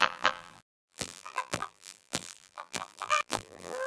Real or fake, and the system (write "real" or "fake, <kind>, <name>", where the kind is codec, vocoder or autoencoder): fake, vocoder, BigVGAN v2